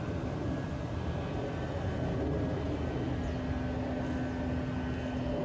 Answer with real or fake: real